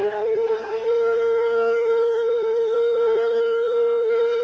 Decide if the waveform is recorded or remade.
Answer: remade